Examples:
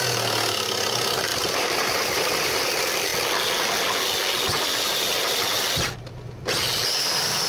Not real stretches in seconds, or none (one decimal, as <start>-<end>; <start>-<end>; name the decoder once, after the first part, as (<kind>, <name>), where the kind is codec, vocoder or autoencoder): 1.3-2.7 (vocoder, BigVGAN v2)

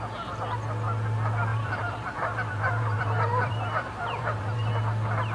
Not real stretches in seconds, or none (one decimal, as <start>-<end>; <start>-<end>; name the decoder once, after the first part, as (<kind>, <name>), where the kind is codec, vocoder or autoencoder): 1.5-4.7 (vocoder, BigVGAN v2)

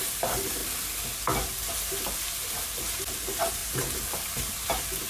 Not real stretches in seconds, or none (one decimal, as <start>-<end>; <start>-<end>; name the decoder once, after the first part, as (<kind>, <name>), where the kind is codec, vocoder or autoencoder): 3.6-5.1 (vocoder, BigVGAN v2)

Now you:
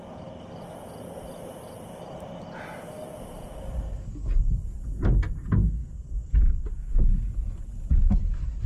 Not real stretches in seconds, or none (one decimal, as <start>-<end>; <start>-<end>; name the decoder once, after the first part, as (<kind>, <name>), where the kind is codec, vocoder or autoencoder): none